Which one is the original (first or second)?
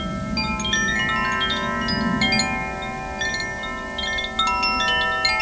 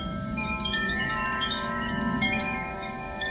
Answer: first